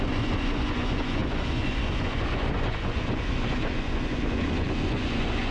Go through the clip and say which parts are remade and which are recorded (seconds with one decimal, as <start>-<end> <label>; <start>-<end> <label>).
0.0-5.5 remade